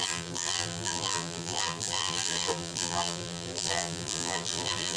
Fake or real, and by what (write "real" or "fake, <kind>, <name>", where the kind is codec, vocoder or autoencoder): fake, vocoder, BigVGAN v2